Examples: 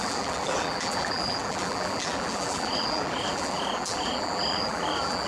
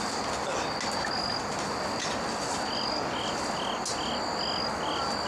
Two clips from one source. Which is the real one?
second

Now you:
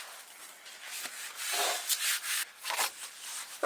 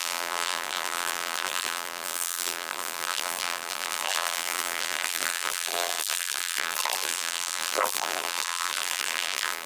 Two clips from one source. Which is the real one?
first